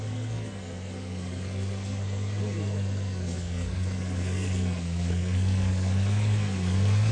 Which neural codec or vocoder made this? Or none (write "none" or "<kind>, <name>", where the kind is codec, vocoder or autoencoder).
codec, SNAC